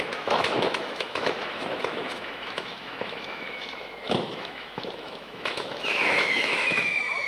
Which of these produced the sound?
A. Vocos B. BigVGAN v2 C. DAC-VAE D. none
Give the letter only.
C